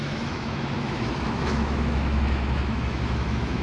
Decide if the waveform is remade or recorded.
remade